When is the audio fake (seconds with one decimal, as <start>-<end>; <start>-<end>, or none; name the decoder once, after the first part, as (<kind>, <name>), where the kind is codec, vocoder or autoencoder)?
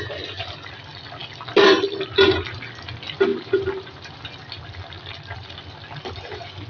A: 3.3-4.3 (vocoder, BigVGAN v2)